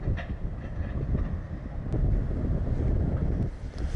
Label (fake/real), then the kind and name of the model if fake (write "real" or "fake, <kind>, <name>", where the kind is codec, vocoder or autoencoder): real